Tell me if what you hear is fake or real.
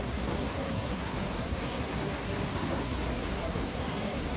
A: fake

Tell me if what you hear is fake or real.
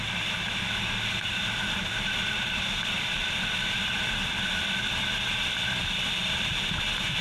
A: real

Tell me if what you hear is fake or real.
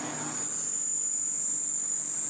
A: real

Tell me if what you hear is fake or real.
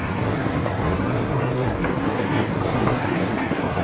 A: fake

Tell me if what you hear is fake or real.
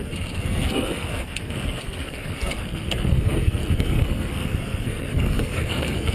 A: fake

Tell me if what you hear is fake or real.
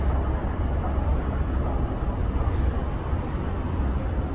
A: real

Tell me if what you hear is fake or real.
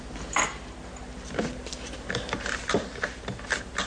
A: real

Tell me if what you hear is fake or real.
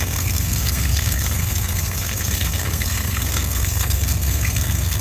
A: fake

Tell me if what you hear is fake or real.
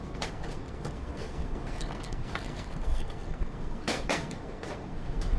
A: fake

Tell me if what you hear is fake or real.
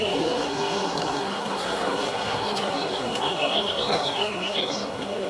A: fake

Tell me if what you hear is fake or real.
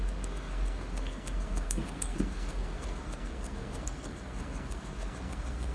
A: fake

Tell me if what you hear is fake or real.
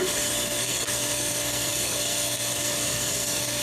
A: fake